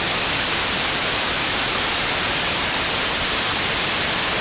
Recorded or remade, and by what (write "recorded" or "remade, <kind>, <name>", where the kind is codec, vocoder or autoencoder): recorded